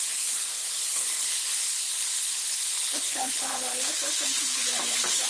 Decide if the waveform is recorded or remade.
remade